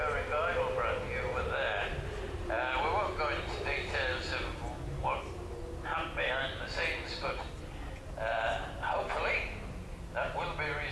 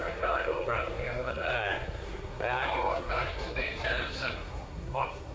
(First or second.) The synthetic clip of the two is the second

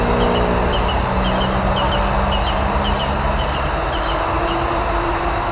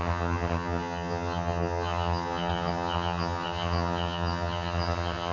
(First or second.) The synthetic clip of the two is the second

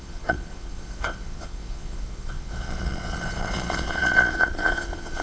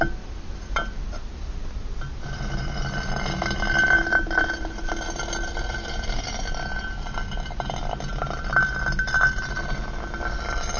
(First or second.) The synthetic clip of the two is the first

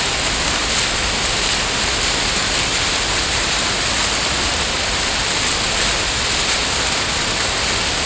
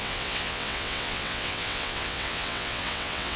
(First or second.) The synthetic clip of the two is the second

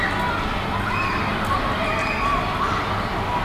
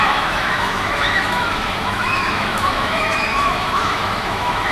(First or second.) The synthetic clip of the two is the second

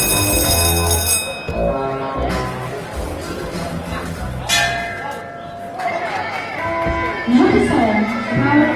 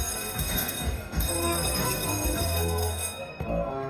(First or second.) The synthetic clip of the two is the second